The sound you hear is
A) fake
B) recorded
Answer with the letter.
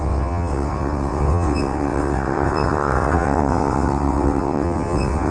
A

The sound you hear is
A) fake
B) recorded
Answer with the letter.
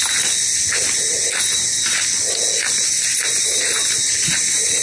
B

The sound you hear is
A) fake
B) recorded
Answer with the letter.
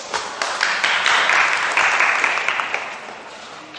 B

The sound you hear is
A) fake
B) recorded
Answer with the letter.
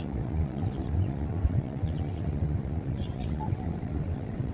A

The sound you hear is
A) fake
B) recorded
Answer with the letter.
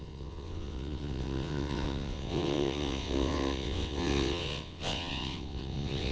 A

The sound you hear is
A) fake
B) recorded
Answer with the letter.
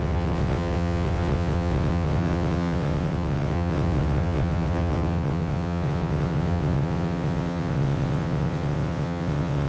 A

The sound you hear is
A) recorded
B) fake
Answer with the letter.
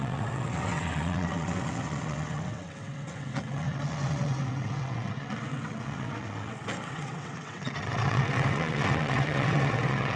B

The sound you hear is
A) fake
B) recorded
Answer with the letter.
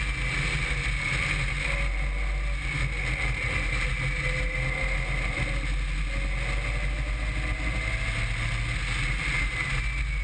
B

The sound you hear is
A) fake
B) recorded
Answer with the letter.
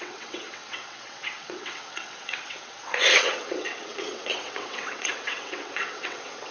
A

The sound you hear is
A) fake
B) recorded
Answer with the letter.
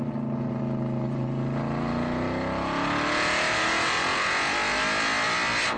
B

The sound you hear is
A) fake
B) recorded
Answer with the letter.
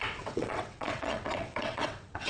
A